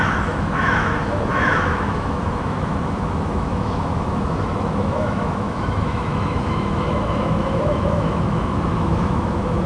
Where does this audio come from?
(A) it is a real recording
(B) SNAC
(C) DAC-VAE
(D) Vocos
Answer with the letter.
C